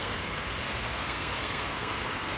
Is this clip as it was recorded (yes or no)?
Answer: no